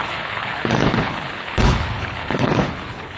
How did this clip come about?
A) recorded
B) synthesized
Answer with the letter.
B